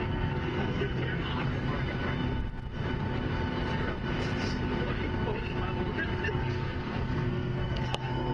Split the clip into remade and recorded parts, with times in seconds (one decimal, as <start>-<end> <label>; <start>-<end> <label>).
0.0-1.3 remade; 1.3-6.3 recorded; 6.3-8.3 remade